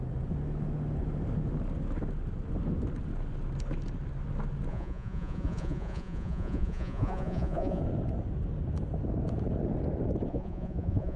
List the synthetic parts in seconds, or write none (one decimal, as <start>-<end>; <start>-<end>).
4.7-7.8; 10.3-11.2